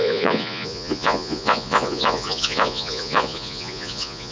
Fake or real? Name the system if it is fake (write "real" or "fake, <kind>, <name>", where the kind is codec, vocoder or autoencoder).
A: fake, vocoder, Vocos